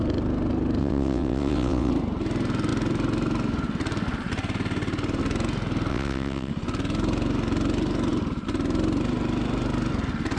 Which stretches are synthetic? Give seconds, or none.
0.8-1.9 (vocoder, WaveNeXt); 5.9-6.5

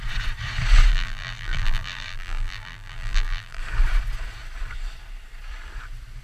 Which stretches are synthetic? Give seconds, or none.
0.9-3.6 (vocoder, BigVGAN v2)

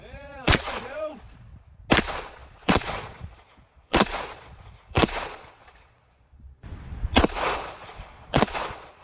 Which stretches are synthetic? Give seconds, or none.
0.0-1.5 (vocoder, Vocos); 2.0-9.0

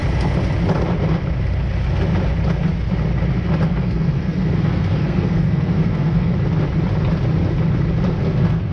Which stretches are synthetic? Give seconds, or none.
3.7-6.3 (codec, SNAC); 8.1-8.7